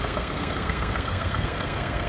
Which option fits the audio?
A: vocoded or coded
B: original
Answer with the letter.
A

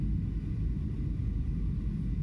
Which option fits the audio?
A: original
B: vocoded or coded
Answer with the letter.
A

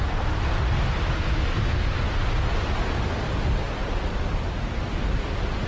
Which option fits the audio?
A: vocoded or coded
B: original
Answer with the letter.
B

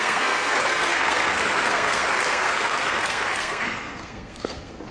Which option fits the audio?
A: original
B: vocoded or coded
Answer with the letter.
B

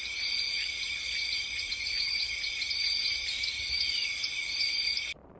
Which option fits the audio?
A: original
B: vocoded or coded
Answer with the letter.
B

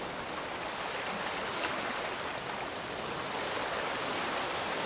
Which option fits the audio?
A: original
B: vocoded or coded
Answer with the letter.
A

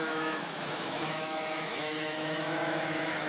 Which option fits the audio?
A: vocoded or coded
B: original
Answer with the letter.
A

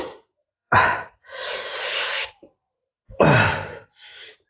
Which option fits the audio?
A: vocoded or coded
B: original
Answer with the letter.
A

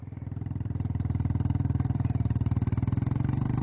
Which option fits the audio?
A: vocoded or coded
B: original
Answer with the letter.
A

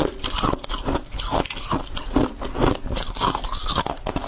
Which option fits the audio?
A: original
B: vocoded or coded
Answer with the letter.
A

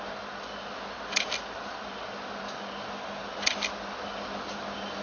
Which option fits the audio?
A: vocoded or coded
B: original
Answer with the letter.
B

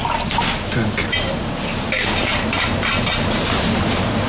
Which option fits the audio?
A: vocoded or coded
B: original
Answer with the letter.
B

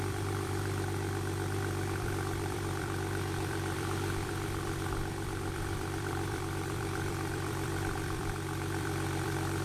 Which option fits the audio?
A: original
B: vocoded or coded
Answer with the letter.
B